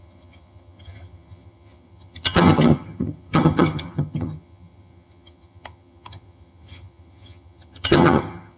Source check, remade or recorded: remade